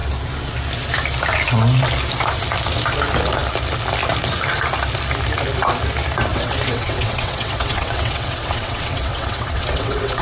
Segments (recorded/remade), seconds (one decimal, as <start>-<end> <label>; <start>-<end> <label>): 0.0-6.3 recorded; 6.3-10.2 remade